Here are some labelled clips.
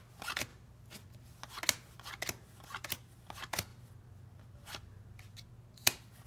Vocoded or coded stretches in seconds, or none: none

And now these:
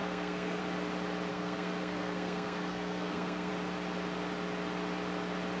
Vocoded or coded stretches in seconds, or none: 0.0-0.6 (codec, SNAC); 1.3-3.5

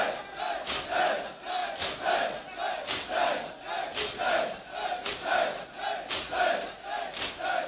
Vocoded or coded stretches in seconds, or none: none

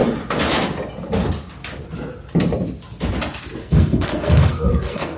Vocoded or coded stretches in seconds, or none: 3.6-5.2 (codec, SNAC)

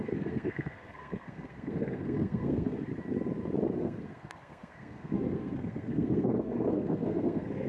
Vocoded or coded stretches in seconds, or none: 0.0-2.9 (codec, SNAC); 3.8-7.7

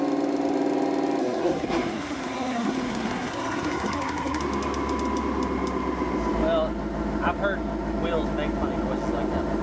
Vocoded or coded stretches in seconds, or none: 1.2-4.4 (codec, SNAC)

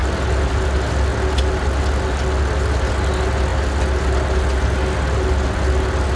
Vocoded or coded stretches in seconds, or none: none